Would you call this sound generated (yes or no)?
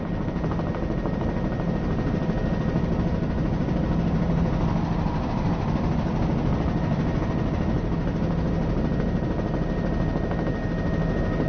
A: no